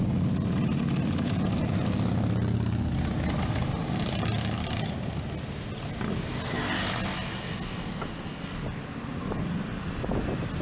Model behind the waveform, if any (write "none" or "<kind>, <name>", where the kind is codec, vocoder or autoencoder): none